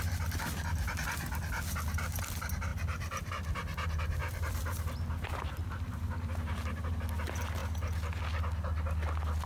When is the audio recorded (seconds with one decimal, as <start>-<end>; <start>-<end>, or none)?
0.0-2.7; 3.3-4.2; 6.9-9.5